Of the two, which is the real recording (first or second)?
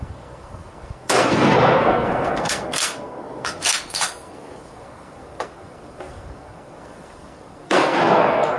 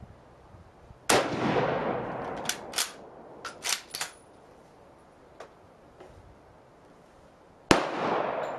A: second